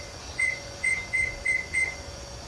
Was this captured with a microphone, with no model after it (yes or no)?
no